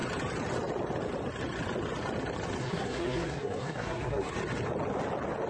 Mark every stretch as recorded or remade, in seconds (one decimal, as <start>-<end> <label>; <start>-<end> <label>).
0.0-2.6 recorded; 2.6-4.3 remade; 4.3-5.5 recorded